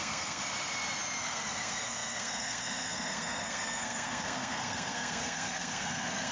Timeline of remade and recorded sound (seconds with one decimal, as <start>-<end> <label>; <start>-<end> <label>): 0.0-0.4 remade; 0.4-1.2 recorded; 1.2-6.3 remade